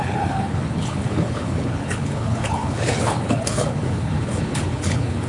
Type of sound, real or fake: fake